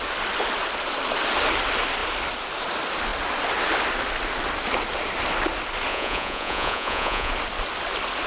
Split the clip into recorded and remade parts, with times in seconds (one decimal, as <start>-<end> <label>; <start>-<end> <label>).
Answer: 0.0-5.9 recorded; 5.9-7.3 remade; 7.3-8.3 recorded